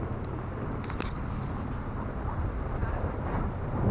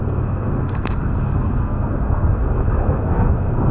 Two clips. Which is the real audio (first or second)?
first